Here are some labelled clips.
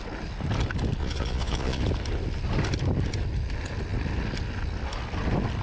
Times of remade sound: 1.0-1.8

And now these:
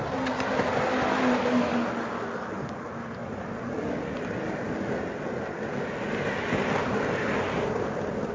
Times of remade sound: none

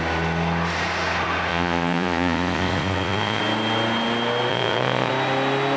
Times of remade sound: 1.5-3.4; 4.5-5.1

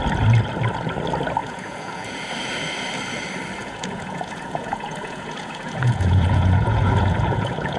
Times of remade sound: 1.4-2.3; 3.6-7.8